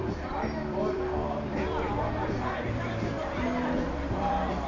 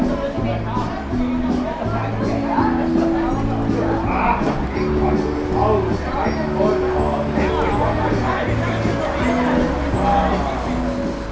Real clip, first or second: second